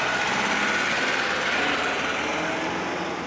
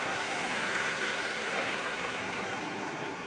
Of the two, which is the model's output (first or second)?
second